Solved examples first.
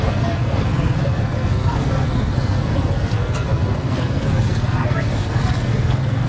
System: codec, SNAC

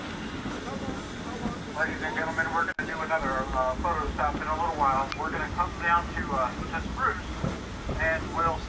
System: none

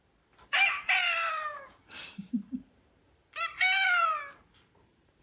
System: vocoder, BigVGAN v2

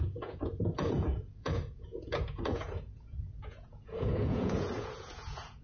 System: vocoder, Vocos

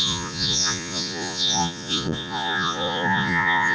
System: vocoder, Vocos